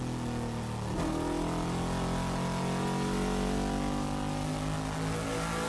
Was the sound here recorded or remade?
recorded